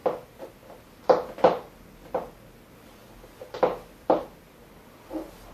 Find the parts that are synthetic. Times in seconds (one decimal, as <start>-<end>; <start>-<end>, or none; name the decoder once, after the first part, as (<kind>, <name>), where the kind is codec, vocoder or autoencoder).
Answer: none